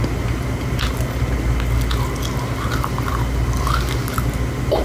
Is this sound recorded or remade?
recorded